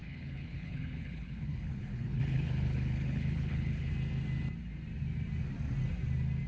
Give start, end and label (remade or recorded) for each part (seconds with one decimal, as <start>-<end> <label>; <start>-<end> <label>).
0.0-3.9 remade; 3.9-6.5 recorded